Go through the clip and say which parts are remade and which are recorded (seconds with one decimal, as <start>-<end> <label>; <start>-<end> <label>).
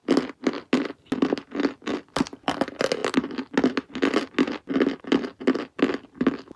0.0-6.6 recorded